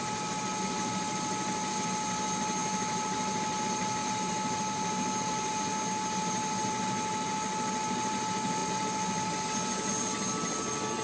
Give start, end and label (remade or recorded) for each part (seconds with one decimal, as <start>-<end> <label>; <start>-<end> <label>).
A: 0.0-11.0 recorded